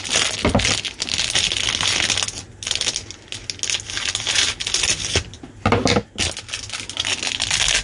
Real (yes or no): yes